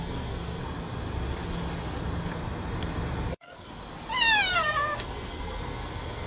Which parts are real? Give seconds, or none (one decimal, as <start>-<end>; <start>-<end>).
0.6-3.3; 3.8-4.5